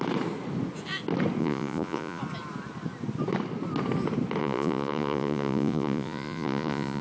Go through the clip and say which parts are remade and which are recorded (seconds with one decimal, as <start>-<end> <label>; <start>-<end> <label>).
0.0-1.4 recorded; 1.4-2.2 remade; 2.2-4.4 recorded; 4.4-7.0 remade